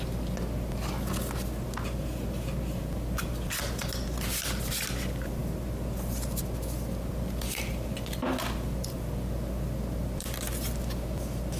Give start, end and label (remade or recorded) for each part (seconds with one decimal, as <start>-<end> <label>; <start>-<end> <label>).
0.0-11.6 recorded